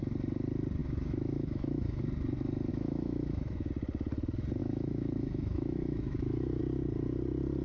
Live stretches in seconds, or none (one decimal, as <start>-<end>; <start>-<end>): 0.0-0.8; 2.0-2.7; 3.7-4.6; 6.6-7.6

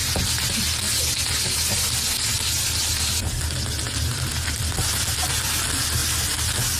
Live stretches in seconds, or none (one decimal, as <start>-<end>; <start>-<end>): 0.0-6.8

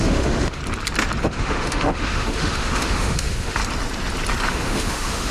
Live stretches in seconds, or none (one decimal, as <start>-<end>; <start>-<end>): 0.6-1.2; 3.6-4.5

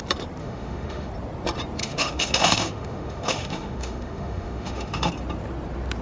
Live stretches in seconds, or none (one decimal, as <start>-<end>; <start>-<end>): 0.0-0.4; 1.1-1.8; 5.1-6.0

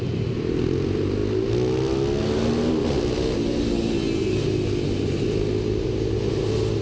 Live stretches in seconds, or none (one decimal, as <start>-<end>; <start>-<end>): 0.0-6.8